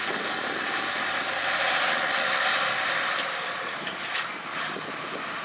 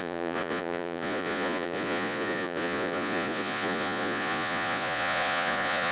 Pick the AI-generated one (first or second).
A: second